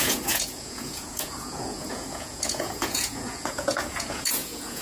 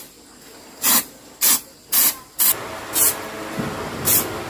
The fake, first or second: first